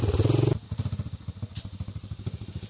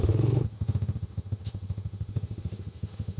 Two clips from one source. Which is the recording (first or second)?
first